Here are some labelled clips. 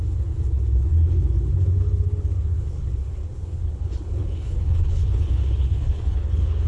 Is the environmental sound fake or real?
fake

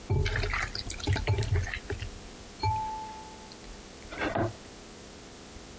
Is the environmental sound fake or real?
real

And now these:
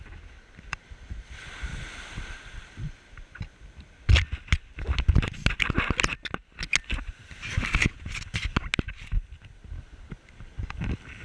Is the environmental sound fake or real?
real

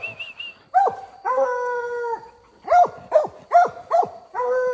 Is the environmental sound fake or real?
real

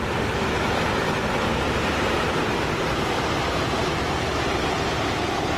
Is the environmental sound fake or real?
fake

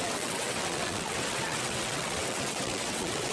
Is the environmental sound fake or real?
fake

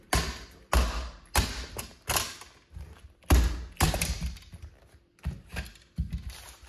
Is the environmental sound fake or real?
real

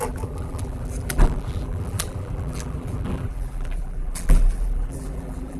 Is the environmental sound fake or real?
fake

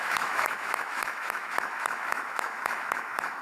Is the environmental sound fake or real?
fake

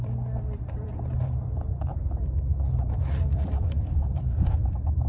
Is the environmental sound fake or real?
fake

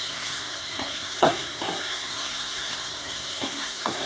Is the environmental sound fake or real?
fake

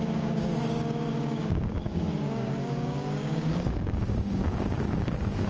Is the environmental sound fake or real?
fake